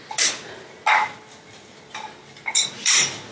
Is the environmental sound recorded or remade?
recorded